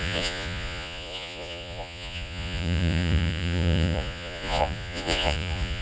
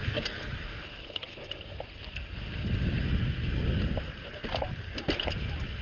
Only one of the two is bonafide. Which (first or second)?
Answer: second